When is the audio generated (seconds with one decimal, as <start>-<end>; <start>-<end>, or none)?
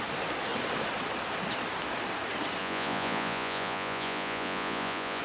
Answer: 2.6-5.2